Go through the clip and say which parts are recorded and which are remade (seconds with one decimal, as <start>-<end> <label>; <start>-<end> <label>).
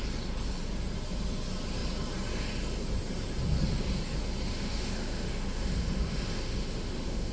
0.0-4.5 recorded; 4.5-7.3 remade